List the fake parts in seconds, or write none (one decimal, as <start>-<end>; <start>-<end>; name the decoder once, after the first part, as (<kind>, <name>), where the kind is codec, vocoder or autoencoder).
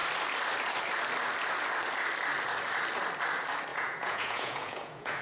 3.7-5.2 (vocoder, Vocos)